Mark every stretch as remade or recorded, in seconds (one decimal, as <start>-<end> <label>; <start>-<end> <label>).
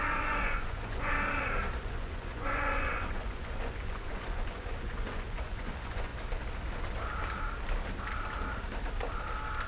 0.0-1.1 remade; 1.1-1.8 recorded; 1.8-6.1 remade; 6.1-9.7 recorded